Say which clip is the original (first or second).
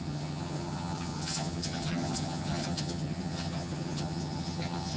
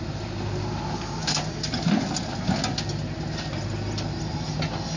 second